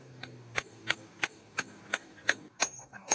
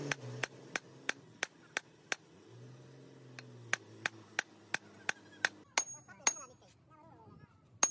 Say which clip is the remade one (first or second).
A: first